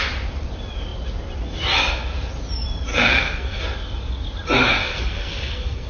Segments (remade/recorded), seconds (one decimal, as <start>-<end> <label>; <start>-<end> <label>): 0.0-2.9 recorded; 2.9-3.6 remade; 3.6-4.8 recorded; 4.8-5.9 remade